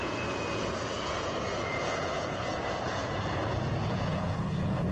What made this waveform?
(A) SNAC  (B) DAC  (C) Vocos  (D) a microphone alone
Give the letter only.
C